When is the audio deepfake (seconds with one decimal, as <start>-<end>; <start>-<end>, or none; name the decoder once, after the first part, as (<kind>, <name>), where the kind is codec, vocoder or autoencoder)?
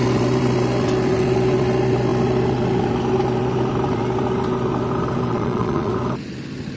5.3-5.9 (vocoder, Vocos)